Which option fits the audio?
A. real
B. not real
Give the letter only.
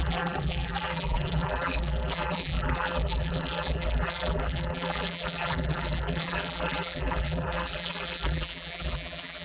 B